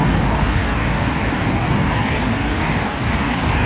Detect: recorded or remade remade